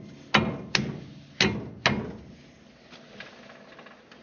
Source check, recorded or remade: recorded